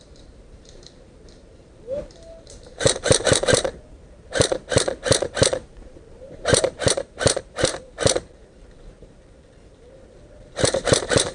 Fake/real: fake